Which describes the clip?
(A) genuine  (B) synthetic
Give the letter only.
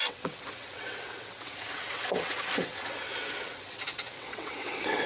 B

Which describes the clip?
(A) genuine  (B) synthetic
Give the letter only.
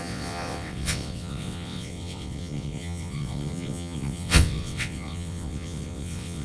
B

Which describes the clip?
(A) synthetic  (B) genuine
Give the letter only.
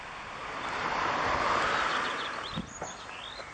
B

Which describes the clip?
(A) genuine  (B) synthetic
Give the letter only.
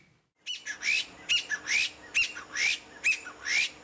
A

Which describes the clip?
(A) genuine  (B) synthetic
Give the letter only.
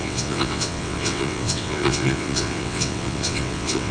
B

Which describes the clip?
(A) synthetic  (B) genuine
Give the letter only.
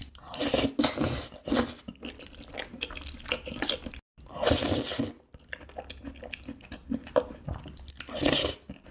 B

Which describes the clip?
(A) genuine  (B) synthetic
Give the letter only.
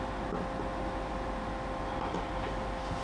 A